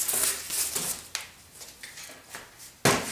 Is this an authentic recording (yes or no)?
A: yes